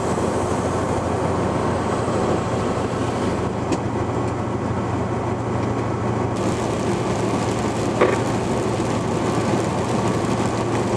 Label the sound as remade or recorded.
recorded